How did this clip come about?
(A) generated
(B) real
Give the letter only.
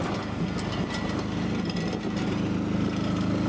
B